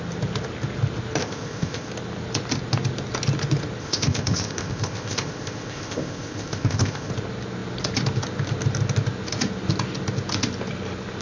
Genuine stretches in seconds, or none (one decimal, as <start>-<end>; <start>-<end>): 0.0-1.2; 1.9-3.8; 7.1-11.2